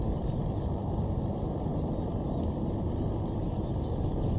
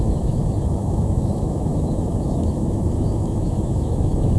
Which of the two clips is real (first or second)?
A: first